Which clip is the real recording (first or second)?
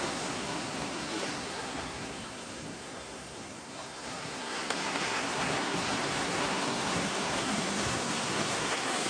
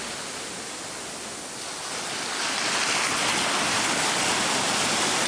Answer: second